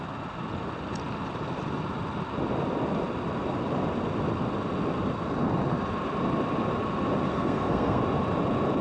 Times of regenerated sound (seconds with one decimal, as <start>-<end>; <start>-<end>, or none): 7.3-8.0

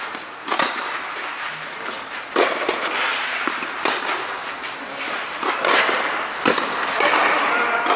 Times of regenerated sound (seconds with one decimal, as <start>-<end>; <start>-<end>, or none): none